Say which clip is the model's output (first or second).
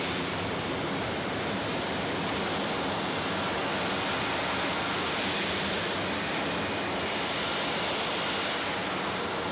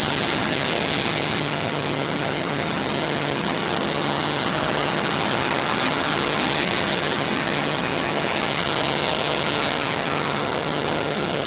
second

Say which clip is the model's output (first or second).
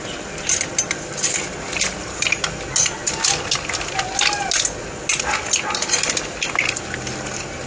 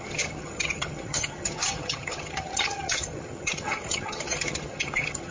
second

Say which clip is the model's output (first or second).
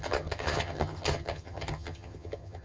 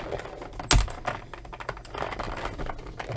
first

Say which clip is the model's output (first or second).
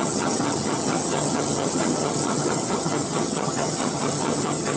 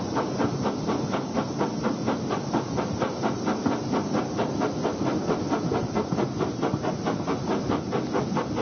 first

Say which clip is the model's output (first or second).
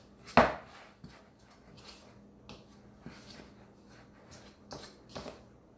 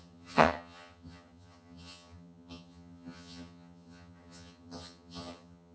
second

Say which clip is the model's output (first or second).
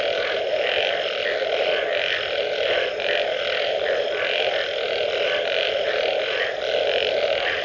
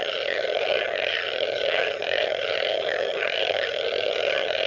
second